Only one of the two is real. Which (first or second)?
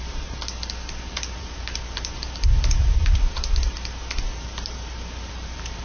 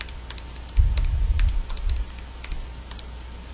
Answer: second